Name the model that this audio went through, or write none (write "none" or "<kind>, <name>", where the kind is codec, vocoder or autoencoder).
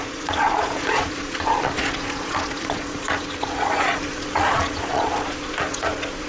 vocoder, Vocos